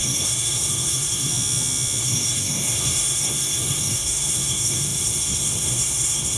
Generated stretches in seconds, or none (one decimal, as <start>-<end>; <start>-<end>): 0.0-1.3; 2.0-6.4